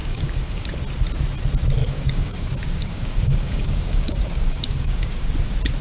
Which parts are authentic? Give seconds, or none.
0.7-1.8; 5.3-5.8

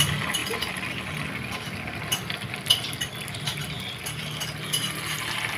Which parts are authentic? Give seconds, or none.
0.0-5.6

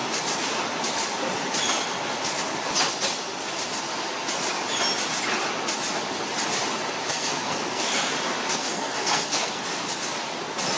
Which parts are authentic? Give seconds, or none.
0.0-7.1; 8.1-8.5; 9.6-10.8

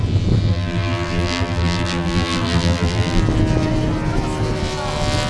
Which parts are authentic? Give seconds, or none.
0.0-0.5; 3.2-5.3

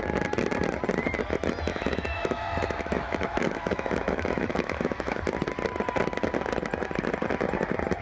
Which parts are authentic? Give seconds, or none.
0.0-1.7; 5.2-8.0